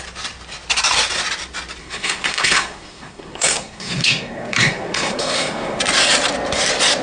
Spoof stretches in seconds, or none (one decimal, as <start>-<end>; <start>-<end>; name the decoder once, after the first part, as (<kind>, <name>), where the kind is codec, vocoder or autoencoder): 1.8-5.8 (codec, SNAC)